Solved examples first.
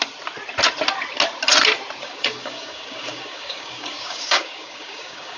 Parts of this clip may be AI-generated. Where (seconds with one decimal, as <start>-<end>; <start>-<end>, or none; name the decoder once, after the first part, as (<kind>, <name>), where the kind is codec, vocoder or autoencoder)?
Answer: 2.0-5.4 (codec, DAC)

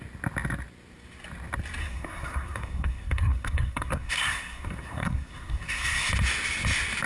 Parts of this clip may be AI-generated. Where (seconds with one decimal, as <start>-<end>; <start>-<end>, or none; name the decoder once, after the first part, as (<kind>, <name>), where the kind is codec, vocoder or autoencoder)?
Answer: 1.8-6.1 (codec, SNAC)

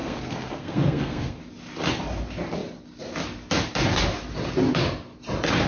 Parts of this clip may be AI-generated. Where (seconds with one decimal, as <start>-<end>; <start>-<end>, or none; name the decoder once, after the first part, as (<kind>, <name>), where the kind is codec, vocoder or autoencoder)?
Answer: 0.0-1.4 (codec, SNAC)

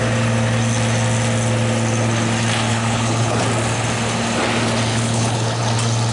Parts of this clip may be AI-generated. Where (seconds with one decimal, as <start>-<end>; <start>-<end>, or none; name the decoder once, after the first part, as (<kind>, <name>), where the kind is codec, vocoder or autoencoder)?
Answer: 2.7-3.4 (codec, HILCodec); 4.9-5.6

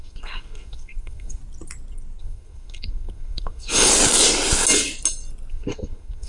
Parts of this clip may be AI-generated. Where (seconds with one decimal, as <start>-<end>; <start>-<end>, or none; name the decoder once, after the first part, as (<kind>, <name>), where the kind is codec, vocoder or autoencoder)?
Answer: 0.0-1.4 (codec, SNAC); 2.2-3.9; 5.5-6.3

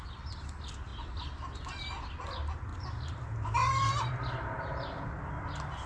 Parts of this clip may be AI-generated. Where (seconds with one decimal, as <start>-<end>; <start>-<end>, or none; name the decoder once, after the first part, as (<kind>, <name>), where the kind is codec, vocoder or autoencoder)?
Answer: 2.7-5.3 (vocoder, BigVGAN v2)

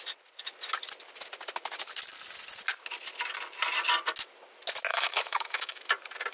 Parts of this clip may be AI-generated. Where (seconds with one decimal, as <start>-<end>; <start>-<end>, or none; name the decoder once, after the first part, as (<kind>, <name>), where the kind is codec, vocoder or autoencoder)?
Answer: 4.9-5.8 (autoencoder, DAC-VAE)

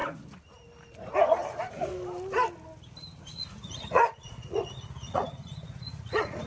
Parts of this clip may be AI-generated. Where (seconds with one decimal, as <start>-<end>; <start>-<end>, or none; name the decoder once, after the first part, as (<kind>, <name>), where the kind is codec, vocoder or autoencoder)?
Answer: 3.2-6.5 (vocoder, Vocos)